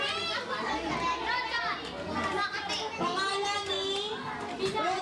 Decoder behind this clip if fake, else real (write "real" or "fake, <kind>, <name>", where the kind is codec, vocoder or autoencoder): real